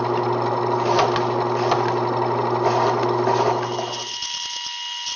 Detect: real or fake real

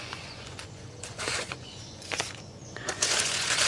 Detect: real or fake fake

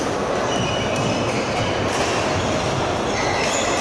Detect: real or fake real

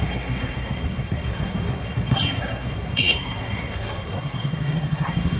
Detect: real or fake fake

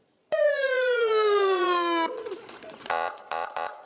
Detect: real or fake fake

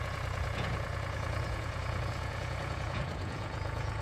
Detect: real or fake fake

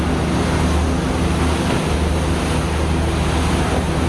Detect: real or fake real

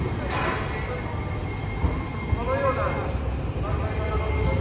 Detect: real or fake real